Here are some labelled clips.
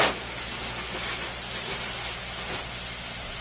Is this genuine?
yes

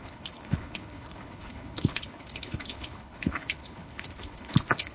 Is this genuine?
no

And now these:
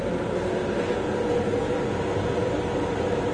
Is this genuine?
yes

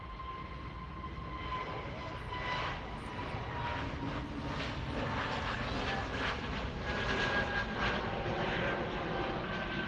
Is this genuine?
yes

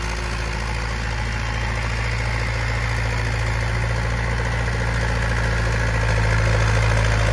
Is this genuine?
yes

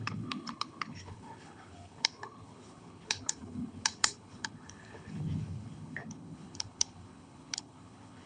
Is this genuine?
no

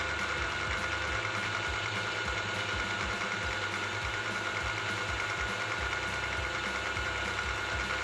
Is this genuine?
yes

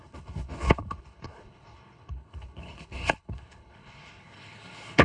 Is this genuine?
no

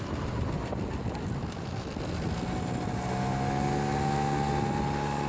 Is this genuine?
yes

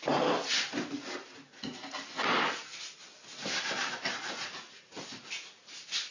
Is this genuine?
yes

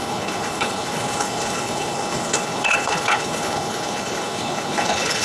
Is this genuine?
no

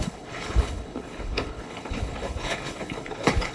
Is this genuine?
no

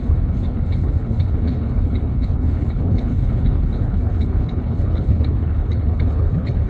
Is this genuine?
no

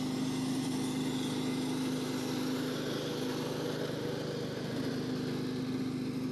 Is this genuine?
yes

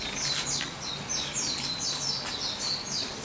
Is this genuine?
yes